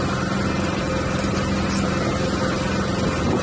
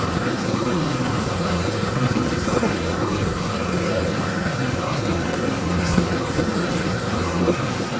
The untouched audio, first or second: first